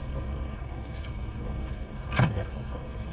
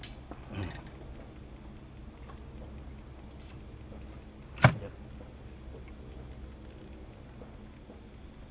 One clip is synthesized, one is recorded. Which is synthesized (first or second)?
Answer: first